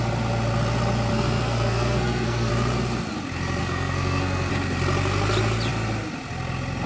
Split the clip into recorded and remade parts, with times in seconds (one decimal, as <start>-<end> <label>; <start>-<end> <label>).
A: 0.0-1.1 recorded; 1.1-2.5 remade; 2.5-3.6 recorded; 3.6-4.5 remade; 4.5-6.9 recorded

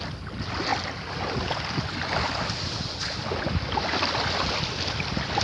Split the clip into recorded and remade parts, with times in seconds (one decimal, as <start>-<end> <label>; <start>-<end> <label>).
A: 0.0-5.4 recorded